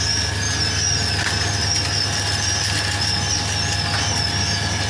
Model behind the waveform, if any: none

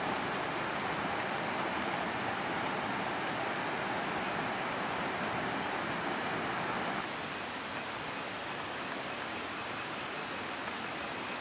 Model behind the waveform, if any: none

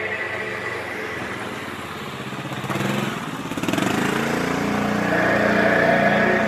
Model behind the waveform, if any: none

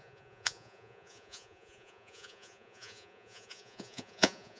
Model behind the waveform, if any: vocoder, Vocos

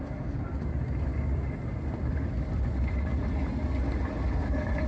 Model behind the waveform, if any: none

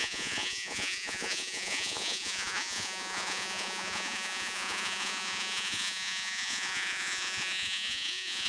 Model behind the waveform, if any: vocoder, Vocos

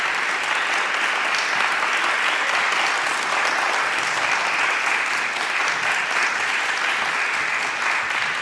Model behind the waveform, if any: none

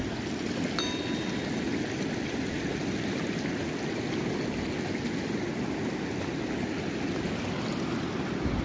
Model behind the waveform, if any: none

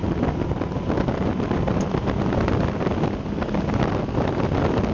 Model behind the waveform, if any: none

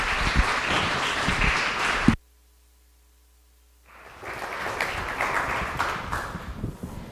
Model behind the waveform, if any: none